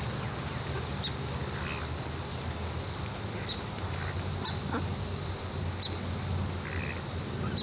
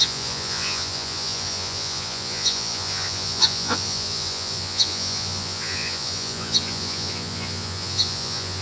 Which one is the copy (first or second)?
second